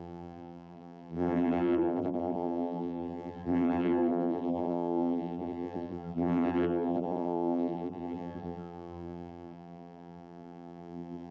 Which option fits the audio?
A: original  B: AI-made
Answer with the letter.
B